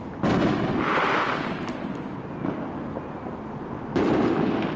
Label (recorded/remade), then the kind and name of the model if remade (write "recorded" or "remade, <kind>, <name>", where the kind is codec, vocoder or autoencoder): recorded